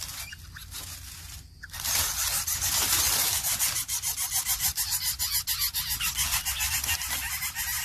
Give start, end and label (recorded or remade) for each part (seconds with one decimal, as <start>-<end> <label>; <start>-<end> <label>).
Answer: 0.0-7.8 recorded